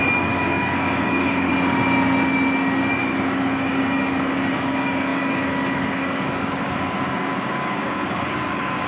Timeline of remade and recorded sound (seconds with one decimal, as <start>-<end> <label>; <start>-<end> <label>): 0.0-1.5 remade; 1.5-2.9 recorded; 2.9-8.9 remade